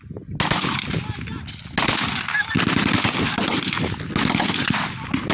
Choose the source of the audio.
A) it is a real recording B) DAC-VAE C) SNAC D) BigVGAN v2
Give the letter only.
A